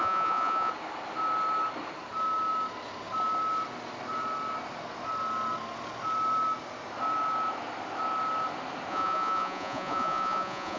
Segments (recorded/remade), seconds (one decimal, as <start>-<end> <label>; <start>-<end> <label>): 0.0-0.7 remade; 0.7-8.9 recorded; 8.9-10.8 remade